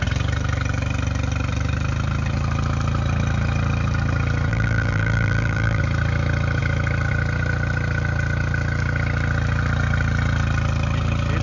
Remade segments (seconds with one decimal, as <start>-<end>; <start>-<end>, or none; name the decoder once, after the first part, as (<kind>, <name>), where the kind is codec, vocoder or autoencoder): 4.5-5.8 (vocoder, BigVGAN v2)